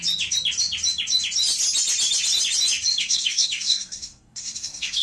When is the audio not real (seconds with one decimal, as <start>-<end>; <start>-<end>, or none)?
3.0-5.0